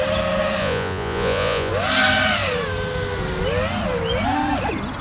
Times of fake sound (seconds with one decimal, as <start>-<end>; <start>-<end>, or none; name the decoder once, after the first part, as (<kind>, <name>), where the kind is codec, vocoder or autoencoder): 0.6-1.7 (vocoder, Vocos)